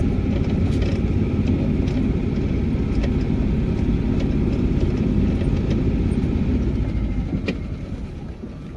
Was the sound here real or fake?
real